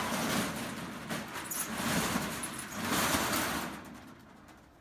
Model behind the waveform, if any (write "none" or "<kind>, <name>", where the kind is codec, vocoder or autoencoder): none